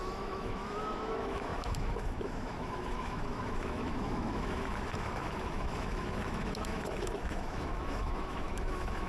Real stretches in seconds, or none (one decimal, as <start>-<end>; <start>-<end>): none